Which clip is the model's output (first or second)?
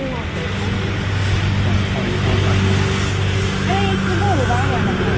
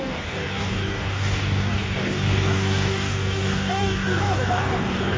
second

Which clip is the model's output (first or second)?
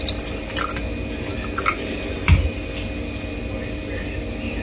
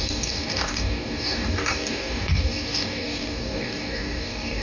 second